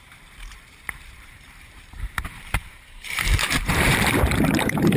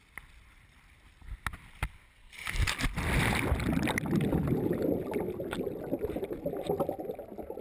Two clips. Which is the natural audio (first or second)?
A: second